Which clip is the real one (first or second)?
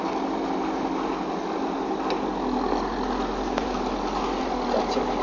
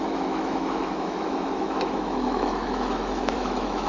first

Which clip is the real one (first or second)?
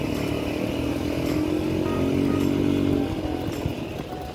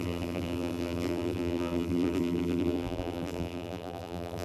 first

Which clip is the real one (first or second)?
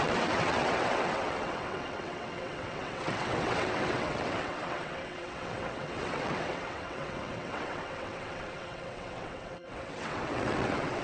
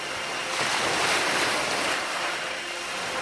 second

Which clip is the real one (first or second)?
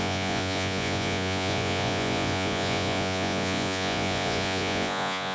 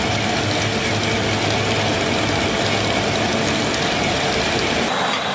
second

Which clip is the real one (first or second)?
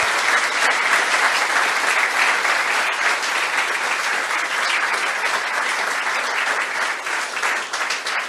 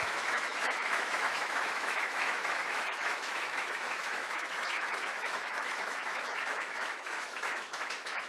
first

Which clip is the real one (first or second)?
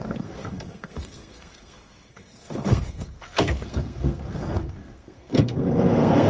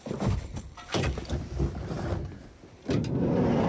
second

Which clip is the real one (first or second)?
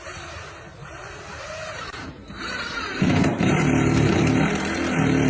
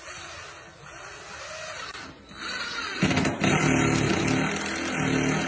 second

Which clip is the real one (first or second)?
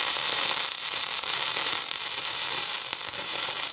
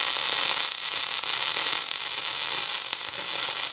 second